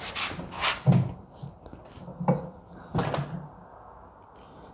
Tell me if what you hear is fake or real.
real